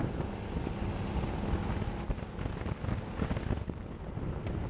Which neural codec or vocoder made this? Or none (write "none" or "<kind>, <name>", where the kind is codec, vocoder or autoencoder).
none